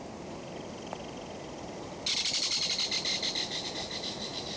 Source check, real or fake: real